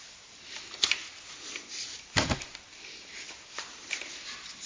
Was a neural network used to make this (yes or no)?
no